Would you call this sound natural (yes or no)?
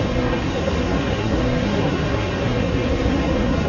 no